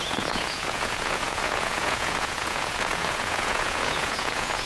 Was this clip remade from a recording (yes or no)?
yes